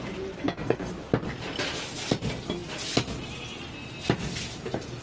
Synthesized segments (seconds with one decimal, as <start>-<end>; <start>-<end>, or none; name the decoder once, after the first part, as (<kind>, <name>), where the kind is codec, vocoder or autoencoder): 0.4-0.9 (codec, SNAC)